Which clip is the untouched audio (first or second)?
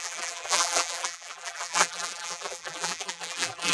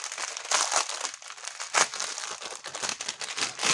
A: second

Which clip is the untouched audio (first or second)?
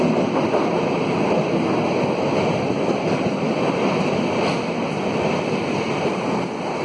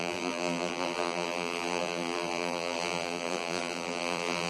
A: first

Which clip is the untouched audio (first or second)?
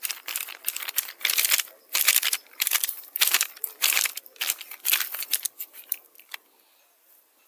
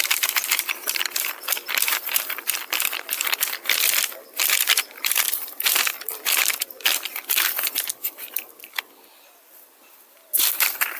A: first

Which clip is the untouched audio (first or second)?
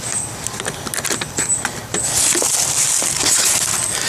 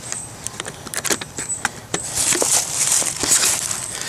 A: first